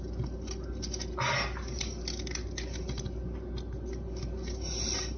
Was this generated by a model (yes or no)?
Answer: no